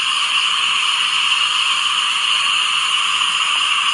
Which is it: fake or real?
real